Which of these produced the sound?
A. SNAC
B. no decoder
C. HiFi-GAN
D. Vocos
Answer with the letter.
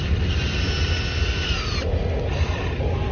B